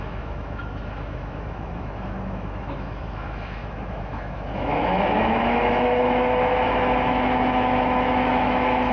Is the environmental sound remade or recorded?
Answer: remade